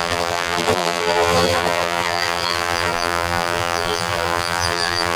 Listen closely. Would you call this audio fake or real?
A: fake